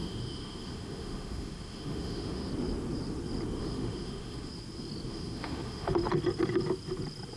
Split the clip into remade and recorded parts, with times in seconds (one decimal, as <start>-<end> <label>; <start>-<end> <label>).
0.0-2.5 remade; 2.5-3.6 recorded; 3.6-4.5 remade; 4.5-5.1 recorded; 5.1-5.9 remade; 5.9-7.4 recorded